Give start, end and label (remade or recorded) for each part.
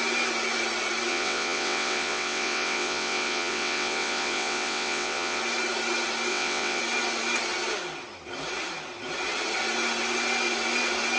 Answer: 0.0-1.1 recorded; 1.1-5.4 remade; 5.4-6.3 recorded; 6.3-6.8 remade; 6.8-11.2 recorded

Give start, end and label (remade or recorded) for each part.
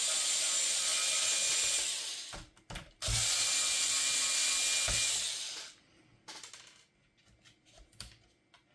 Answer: 0.0-8.7 recorded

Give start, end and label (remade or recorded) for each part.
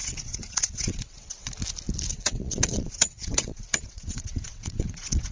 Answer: 0.0-1.5 remade; 1.5-2.1 recorded; 2.1-5.3 remade